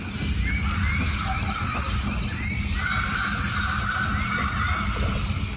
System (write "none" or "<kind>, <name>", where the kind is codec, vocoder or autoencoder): none